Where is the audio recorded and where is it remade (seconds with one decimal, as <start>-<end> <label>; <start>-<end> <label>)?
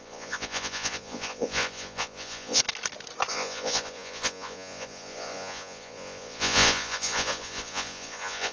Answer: 0.0-2.6 remade; 2.6-3.3 recorded; 3.3-8.5 remade